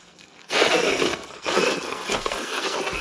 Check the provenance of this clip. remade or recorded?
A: remade